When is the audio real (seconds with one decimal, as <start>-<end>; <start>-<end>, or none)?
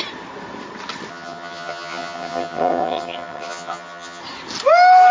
0.0-1.1; 4.2-5.1